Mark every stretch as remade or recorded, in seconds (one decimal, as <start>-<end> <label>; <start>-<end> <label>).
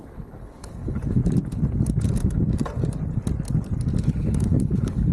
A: 0.0-1.2 remade; 1.2-4.0 recorded; 4.0-5.1 remade